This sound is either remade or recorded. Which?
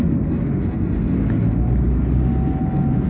recorded